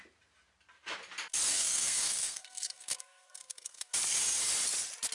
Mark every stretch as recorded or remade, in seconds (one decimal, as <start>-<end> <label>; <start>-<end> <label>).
0.0-1.5 recorded; 1.5-3.9 remade; 3.9-5.1 recorded